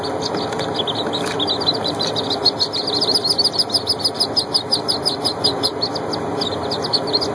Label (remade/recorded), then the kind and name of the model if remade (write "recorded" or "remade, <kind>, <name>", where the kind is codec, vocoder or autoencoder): recorded